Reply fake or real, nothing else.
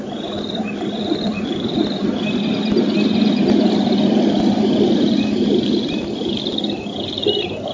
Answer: fake